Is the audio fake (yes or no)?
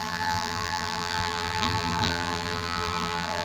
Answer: yes